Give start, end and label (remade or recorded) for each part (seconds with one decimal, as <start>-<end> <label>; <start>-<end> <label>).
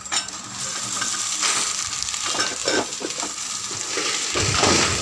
0.0-2.6 recorded; 2.6-3.1 remade; 3.1-5.0 recorded